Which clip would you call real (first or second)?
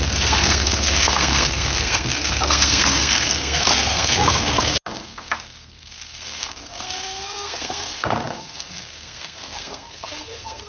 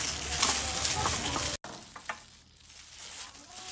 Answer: second